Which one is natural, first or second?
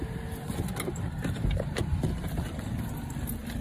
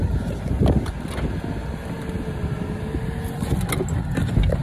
second